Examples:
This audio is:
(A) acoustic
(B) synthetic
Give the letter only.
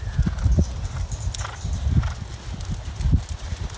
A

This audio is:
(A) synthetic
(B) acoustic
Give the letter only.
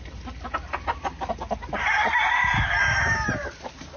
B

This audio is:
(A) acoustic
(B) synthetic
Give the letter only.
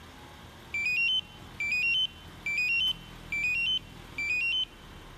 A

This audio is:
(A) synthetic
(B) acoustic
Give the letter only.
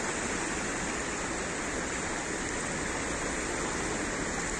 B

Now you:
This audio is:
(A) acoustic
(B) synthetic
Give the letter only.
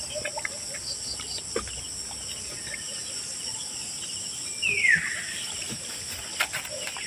A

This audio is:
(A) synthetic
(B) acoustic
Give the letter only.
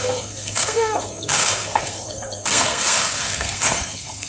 A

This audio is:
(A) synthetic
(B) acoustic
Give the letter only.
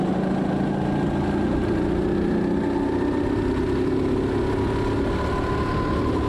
B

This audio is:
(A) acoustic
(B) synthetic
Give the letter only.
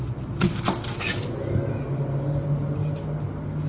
A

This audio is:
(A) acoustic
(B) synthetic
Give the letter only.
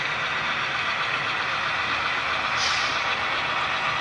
A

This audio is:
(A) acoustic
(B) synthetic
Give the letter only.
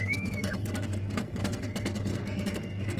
B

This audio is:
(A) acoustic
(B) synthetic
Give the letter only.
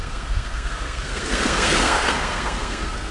B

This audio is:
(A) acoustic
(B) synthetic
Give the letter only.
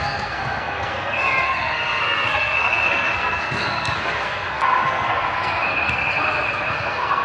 B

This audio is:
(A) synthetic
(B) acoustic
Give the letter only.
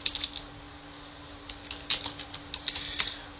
B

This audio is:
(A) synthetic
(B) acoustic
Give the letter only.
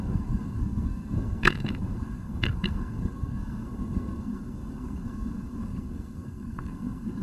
A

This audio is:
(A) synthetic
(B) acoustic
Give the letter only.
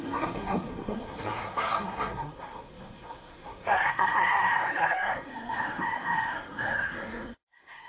A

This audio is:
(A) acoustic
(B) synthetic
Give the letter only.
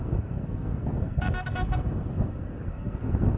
B